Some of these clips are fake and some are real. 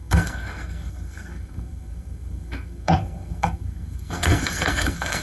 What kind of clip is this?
fake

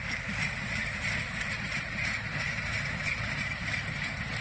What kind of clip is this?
fake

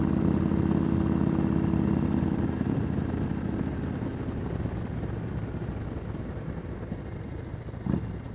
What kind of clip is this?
real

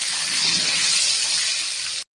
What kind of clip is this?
real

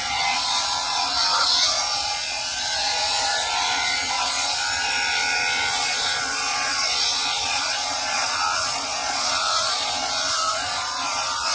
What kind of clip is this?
fake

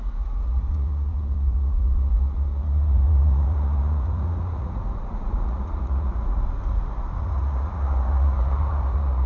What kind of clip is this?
fake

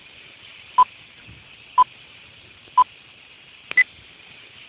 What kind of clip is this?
real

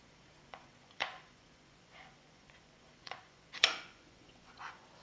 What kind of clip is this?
fake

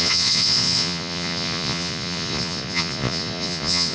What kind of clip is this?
fake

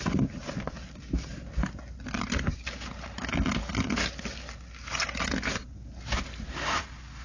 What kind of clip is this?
real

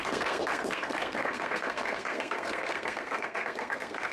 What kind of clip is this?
fake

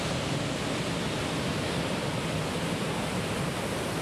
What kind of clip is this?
real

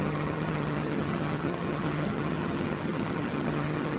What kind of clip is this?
fake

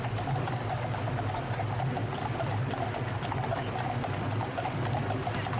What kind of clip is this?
real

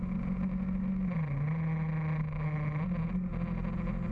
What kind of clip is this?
real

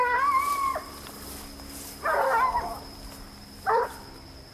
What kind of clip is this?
real